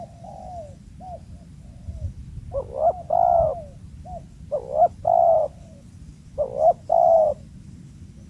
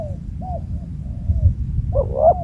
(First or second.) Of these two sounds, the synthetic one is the second